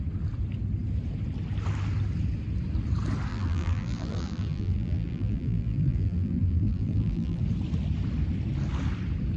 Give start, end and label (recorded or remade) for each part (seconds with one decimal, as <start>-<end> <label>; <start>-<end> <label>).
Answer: 0.0-3.3 recorded; 3.3-7.4 remade; 7.4-9.4 recorded